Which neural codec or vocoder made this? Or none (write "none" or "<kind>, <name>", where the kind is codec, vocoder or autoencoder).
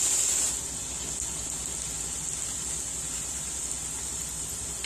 none